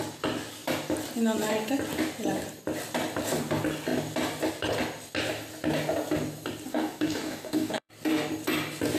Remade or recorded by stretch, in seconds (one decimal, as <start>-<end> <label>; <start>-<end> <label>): 0.0-6.7 recorded; 6.7-7.9 remade; 7.9-9.0 recorded